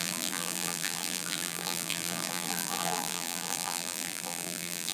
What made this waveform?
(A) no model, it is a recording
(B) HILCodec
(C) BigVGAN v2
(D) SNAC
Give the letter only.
C